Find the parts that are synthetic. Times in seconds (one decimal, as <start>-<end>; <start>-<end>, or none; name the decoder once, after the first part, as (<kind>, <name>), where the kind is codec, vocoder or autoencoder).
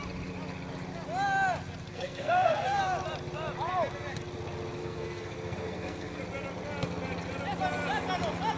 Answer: 1.9-2.8 (codec, SNAC); 4.8-6.2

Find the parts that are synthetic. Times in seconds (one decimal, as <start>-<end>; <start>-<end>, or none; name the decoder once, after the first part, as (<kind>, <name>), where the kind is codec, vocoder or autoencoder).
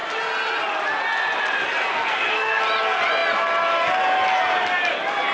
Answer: 1.9-2.6 (codec, SNAC)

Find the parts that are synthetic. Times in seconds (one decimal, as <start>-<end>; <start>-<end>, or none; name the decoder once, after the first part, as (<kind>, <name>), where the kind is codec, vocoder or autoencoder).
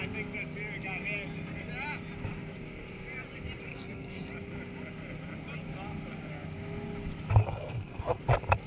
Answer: 3.7-4.3 (codec, SNAC); 7.4-8.2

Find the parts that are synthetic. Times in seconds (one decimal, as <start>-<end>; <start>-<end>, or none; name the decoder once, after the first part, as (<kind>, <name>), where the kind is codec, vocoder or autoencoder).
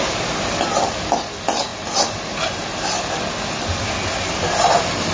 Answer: none